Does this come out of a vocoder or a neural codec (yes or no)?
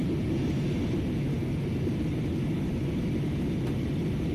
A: no